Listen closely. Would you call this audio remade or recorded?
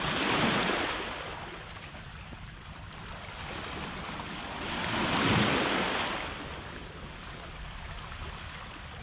recorded